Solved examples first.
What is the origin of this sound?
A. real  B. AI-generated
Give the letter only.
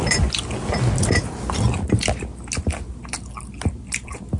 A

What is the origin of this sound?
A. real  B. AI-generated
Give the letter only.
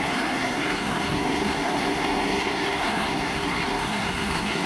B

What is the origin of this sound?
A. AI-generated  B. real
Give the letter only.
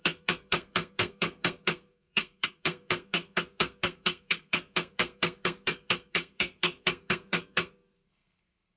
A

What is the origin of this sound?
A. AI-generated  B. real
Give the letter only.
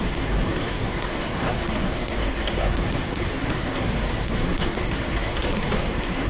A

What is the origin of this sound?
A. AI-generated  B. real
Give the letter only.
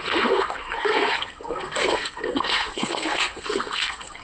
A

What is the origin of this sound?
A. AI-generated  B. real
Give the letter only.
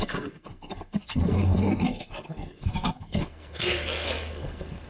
A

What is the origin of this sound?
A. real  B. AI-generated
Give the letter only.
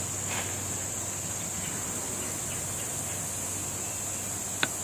A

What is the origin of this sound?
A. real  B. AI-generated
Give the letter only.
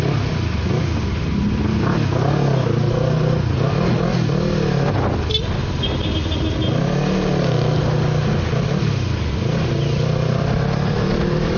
A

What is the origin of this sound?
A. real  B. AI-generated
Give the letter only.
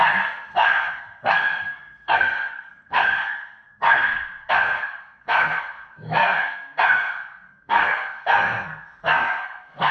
B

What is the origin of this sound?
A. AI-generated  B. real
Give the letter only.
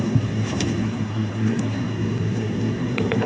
A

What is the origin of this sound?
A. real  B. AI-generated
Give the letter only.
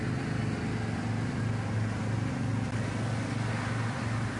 A